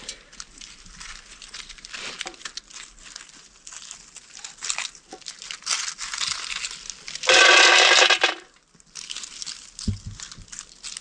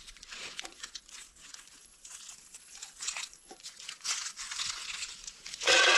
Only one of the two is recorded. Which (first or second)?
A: first